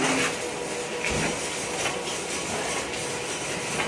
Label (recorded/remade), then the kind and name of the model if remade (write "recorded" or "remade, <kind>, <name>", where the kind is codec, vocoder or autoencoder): recorded